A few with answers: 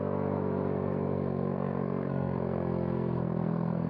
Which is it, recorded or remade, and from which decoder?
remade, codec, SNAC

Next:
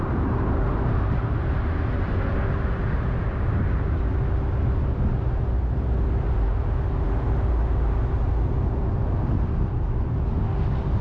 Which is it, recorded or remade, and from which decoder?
recorded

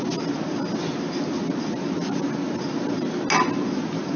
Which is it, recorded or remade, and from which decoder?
recorded